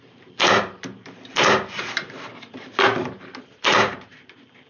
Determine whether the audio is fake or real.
fake